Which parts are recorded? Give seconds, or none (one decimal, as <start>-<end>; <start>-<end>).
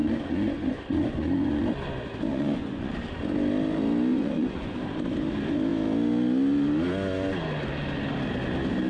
1.6-2.3; 2.9-4.1; 4.7-8.9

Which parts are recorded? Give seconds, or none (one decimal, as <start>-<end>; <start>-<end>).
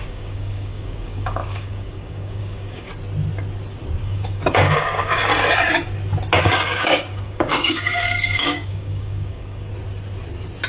2.9-4.0; 5.3-6.4; 9.7-10.7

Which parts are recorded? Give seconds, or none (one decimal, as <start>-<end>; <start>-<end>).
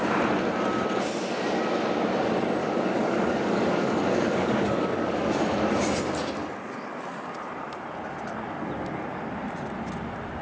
0.0-2.6; 5.4-10.4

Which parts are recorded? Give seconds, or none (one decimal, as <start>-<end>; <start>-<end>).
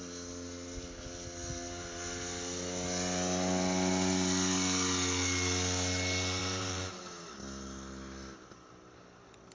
0.0-6.4; 7.0-9.5